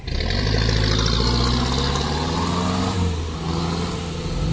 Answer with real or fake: real